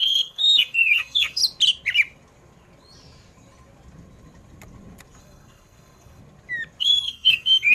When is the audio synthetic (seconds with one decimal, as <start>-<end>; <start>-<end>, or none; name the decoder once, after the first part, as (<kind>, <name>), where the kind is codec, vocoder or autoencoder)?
0.0-1.4 (codec, SNAC); 5.2-6.2; 6.8-7.7